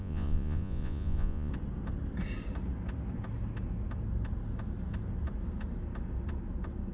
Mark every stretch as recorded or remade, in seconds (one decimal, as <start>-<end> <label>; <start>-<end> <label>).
0.0-1.5 remade; 1.5-6.9 recorded